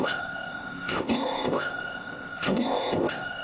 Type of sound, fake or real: fake